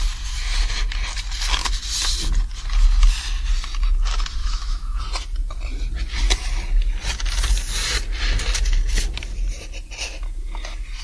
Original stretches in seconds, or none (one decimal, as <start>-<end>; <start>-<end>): 0.0-4.4; 5.0-11.0